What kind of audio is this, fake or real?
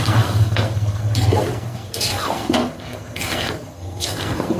fake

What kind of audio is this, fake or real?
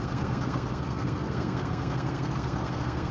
fake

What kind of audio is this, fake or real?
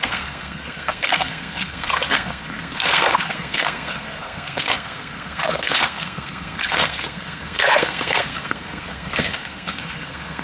fake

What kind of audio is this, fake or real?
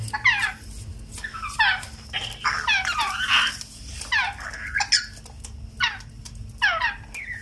real